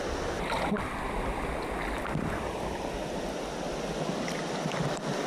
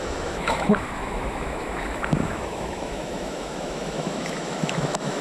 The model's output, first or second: second